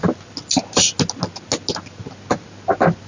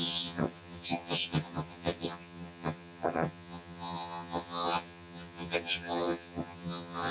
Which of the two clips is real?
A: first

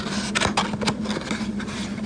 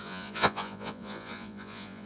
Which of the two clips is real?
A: first